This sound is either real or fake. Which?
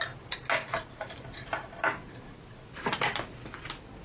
real